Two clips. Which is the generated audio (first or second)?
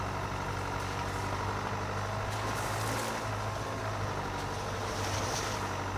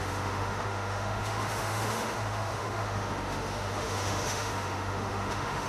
second